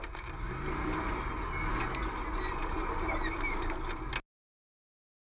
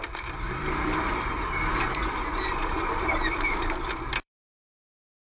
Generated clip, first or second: second